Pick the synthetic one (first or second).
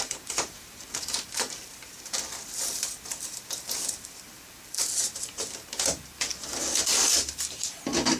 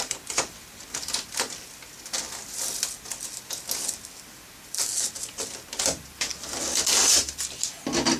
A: first